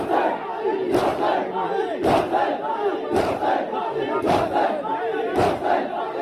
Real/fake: real